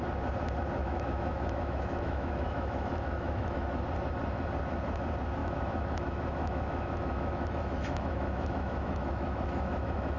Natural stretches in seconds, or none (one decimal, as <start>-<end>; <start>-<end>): 0.0-0.8; 3.8-5.4